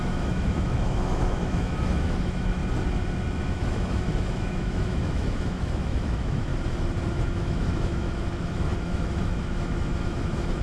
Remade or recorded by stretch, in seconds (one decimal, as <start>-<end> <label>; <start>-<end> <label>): 0.0-2.6 remade; 2.6-3.4 recorded; 3.4-6.5 remade; 6.5-7.3 recorded; 7.3-10.6 remade